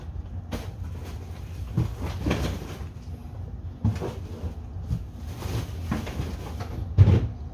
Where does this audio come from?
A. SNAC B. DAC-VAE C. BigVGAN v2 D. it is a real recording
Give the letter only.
D